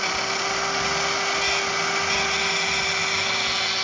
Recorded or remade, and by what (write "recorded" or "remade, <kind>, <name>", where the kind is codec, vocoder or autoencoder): recorded